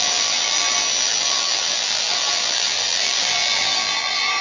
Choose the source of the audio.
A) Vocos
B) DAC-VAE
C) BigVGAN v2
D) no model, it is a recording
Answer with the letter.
C